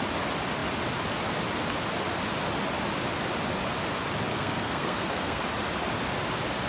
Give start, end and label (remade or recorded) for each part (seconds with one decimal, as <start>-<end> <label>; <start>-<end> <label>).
0.0-4.3 recorded; 4.3-5.4 remade; 5.4-6.7 recorded